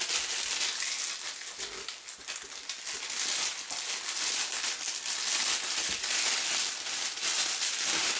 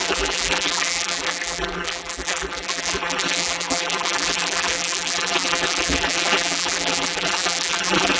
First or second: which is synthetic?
second